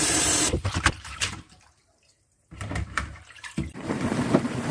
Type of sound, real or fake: fake